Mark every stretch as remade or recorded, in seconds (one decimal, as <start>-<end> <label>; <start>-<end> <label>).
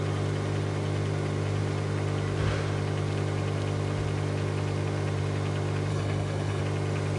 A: 0.0-5.9 recorded; 5.9-6.6 remade; 6.6-7.2 recorded